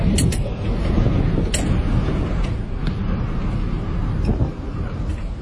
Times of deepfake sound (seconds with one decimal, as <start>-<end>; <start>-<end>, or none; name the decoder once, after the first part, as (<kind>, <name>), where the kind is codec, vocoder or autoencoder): none

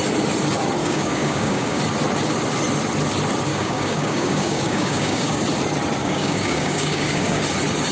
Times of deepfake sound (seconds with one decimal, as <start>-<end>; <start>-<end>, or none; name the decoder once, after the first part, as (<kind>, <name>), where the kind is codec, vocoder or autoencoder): 0.8-1.8 (codec, DAC); 3.5-5.4; 6.0-7.4

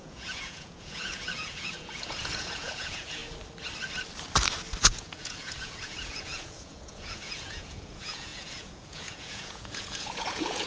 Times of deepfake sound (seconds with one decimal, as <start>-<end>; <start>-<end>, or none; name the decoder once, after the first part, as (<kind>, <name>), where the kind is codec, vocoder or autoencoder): 0.0-3.2 (vocoder, Vocos); 4.8-10.7